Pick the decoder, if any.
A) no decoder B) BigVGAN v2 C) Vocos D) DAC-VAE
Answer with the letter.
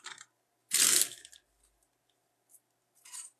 A